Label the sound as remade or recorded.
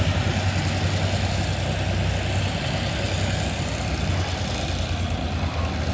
recorded